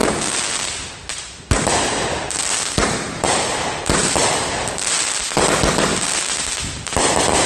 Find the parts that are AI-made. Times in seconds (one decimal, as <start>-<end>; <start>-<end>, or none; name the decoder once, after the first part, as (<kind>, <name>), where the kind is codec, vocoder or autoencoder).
none